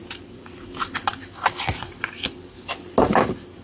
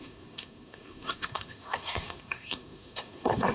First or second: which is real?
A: first